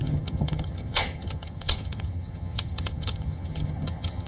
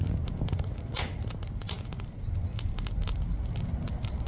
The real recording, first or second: second